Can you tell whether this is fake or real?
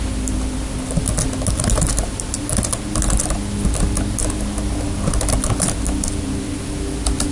real